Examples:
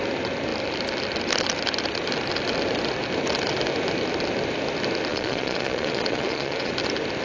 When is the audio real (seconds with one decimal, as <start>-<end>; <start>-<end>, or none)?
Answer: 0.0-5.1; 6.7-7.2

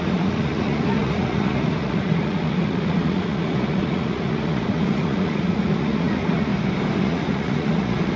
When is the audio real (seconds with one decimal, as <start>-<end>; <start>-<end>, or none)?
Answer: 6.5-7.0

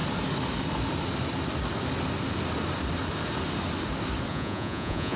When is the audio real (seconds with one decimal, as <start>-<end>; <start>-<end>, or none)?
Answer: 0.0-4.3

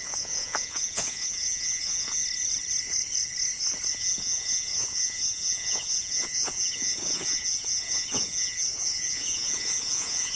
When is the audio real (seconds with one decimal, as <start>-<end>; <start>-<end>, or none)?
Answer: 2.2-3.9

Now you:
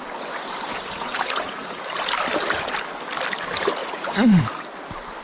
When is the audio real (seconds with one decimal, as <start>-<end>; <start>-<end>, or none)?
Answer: 0.0-0.7; 1.8-3.8; 4.4-5.2

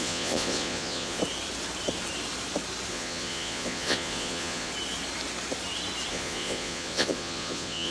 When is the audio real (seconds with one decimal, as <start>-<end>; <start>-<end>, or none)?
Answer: 1.2-2.9; 4.7-6.1